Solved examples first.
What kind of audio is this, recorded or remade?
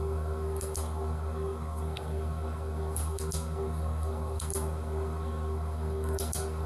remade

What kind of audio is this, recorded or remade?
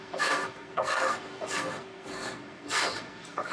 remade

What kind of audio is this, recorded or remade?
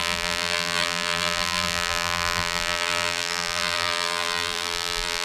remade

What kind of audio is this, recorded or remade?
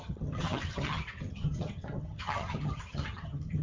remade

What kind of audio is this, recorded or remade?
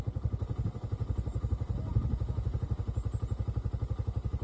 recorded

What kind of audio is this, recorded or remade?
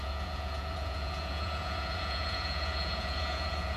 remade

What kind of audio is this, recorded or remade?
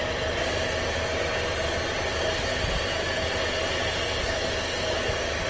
recorded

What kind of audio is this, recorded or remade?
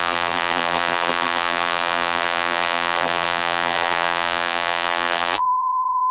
remade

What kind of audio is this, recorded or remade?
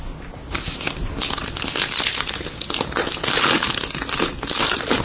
recorded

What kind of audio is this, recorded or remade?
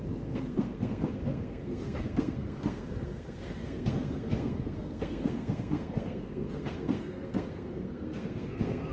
remade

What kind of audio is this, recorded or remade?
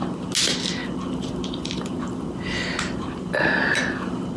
recorded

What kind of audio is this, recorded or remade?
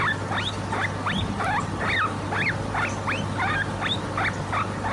recorded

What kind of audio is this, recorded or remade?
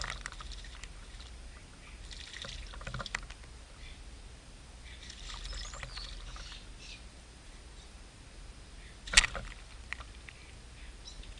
recorded